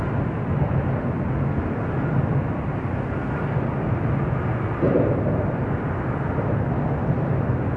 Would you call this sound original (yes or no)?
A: yes